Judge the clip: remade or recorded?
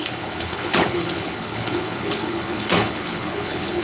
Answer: remade